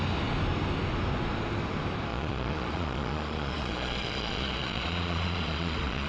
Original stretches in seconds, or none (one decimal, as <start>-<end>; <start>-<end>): 0.0-2.1

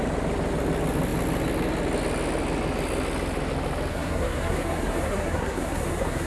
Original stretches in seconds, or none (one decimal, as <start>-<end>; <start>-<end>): 0.0-3.9